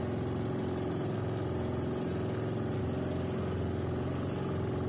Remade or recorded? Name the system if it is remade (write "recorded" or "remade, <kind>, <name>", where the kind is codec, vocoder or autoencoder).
recorded